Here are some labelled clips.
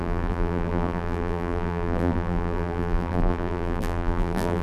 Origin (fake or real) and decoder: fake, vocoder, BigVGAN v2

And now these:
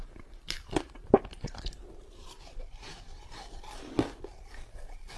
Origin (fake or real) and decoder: fake, vocoder, BigVGAN v2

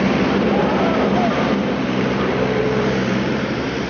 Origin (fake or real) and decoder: fake, vocoder, BigVGAN v2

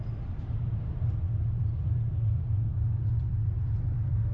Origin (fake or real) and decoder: fake, vocoder, BigVGAN v2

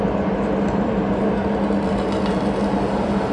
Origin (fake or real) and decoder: real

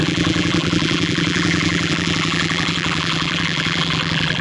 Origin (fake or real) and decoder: fake, vocoder, BigVGAN v2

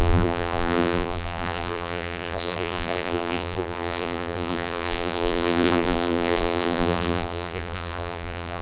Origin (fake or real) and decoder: fake, vocoder, BigVGAN v2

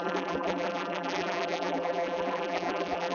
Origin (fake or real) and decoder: fake, vocoder, BigVGAN v2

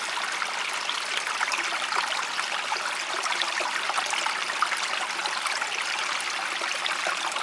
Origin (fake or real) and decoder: real